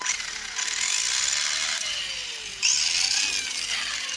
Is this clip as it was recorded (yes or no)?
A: yes